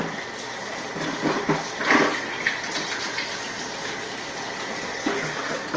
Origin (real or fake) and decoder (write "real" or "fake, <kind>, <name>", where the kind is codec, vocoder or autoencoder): real